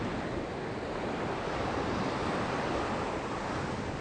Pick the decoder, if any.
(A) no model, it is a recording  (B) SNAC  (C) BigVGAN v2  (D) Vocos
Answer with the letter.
A